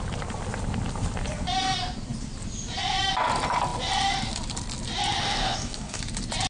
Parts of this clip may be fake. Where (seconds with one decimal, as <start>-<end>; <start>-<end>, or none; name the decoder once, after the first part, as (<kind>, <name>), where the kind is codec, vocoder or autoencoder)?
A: 5.2-6.0 (codec, DAC)